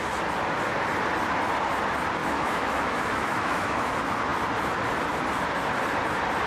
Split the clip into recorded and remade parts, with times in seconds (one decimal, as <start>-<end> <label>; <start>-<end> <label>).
0.0-2.2 recorded; 2.2-3.9 remade; 3.9-6.5 recorded

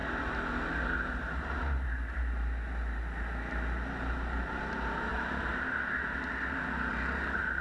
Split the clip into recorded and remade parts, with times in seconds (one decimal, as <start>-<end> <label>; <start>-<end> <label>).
0.0-5.1 recorded; 5.1-5.6 remade; 5.6-6.9 recorded; 6.9-7.6 remade

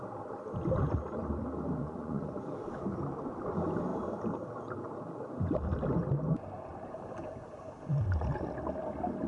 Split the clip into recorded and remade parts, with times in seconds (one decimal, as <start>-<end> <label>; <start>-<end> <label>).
0.0-1.8 recorded; 1.8-2.4 remade; 2.4-9.3 recorded

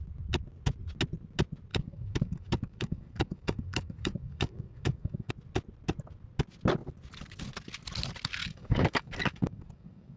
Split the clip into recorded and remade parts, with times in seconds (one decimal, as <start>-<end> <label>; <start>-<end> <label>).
0.0-1.7 recorded; 1.7-5.3 remade; 5.3-8.4 recorded; 8.4-10.2 remade

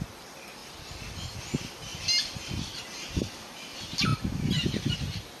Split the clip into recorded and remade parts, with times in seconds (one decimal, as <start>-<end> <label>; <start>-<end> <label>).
0.0-0.6 recorded; 0.6-1.4 remade; 1.4-4.1 recorded; 4.1-5.0 remade; 5.0-5.4 recorded

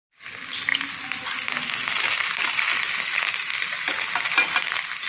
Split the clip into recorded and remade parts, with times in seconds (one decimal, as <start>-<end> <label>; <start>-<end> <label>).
0.0-5.1 recorded

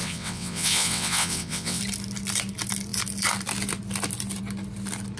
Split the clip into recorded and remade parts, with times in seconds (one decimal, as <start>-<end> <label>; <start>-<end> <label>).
0.0-1.8 remade; 1.8-5.2 recorded

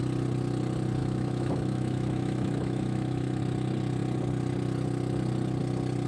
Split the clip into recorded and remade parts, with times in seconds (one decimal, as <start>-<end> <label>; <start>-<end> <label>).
0.0-1.0 recorded; 1.0-3.4 remade; 3.4-6.1 recorded